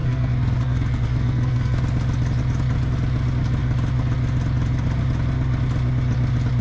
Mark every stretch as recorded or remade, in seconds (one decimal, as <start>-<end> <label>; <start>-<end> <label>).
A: 0.0-1.8 remade; 1.8-6.6 recorded